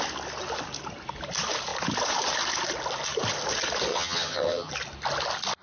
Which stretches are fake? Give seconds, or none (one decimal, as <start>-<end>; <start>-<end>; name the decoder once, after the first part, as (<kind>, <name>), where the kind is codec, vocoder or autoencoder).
3.9-4.7 (vocoder, HiFi-GAN)